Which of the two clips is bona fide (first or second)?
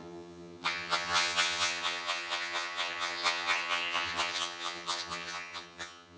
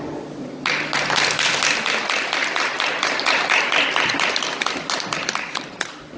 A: second